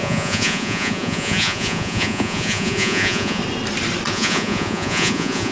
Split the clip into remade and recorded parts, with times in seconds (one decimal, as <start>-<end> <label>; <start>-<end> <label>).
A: 0.0-3.4 remade; 3.4-4.1 recorded; 4.1-5.5 remade